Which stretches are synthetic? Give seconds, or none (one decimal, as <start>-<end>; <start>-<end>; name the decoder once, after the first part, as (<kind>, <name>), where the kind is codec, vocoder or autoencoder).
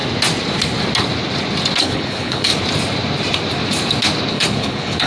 1.8-2.5 (codec, HILCodec); 4.3-5.1